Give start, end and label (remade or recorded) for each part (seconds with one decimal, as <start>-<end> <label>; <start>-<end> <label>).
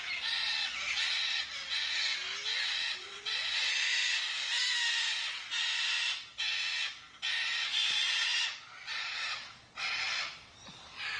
0.0-3.0 recorded; 3.0-3.6 remade; 3.6-7.8 recorded; 7.8-10.1 remade; 10.1-11.2 recorded